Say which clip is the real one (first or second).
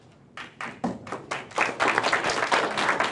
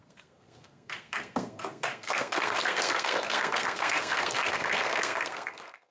first